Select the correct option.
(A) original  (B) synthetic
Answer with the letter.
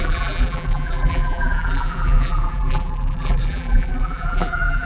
B